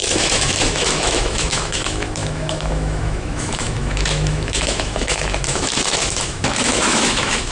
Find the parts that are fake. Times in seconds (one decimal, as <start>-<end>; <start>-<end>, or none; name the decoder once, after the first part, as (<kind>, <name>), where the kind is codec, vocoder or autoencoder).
0.0-7.5 (autoencoder, DAC-VAE)

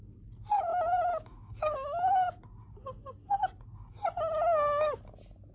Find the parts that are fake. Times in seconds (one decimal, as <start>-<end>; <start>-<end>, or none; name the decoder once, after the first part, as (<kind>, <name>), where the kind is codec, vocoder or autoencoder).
0.7-2.1 (autoencoder, DAC-VAE)